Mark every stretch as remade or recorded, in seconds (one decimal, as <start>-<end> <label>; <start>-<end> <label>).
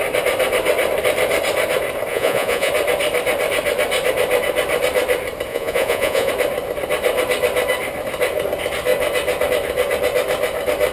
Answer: 0.0-2.1 recorded; 2.1-2.7 remade; 2.7-5.5 recorded; 5.5-6.3 remade; 6.3-10.9 recorded